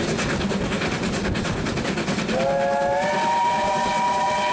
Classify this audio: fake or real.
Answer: real